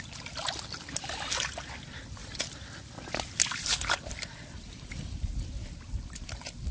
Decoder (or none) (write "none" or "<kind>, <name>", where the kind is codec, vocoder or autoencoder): none